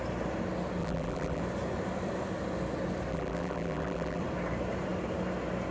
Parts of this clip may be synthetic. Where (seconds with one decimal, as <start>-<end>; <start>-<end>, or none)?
0.8-1.4; 3.1-4.2